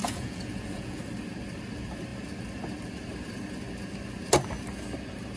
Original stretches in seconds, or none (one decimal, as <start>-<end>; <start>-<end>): 1.0-5.4